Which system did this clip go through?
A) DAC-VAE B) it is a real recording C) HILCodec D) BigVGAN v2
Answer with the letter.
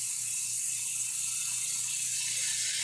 B